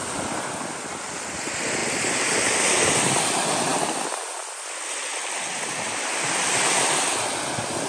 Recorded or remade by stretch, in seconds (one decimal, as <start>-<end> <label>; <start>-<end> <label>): 0.0-7.9 recorded